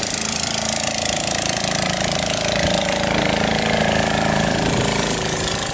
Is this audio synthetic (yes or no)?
yes